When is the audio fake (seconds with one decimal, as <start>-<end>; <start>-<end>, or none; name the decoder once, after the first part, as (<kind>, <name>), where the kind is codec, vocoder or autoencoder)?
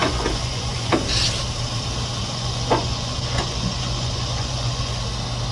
0.0-0.9 (vocoder, Vocos); 2.2-5.0